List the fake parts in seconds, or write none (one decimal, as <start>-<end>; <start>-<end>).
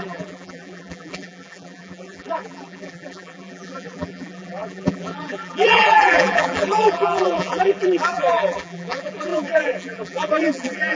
0.0-10.9